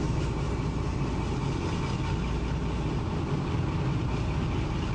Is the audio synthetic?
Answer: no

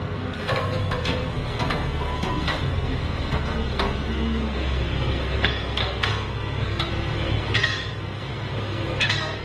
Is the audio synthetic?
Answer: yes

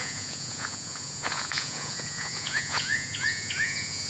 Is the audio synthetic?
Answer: yes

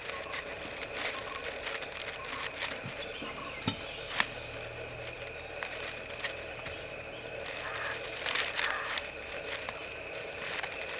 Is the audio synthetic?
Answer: no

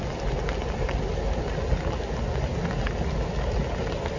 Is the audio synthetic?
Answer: no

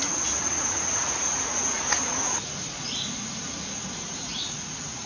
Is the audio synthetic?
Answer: yes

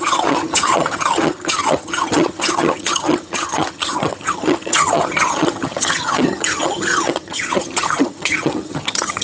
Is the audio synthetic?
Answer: yes